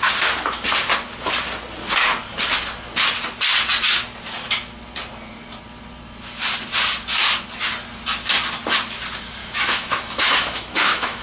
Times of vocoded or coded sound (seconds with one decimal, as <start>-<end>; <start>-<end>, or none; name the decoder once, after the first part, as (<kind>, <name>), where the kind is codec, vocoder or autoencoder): 9.4-11.2 (autoencoder, DAC-VAE)